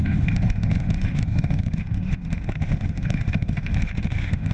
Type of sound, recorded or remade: remade